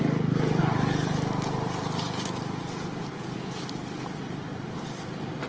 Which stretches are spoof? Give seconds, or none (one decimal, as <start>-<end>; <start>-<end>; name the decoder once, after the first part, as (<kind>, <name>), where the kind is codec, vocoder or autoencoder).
4.5-5.0 (vocoder, BigVGAN v2)